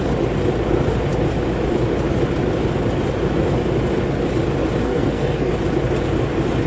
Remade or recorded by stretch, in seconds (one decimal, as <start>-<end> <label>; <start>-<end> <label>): 0.0-4.8 recorded; 4.8-5.5 remade; 5.5-6.7 recorded